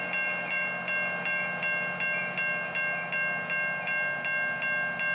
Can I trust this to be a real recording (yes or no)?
yes